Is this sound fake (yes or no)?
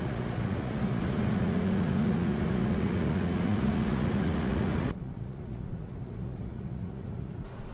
yes